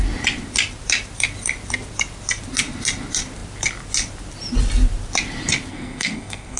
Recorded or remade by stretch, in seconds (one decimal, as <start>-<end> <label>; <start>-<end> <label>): 0.0-5.7 recorded; 5.7-6.6 remade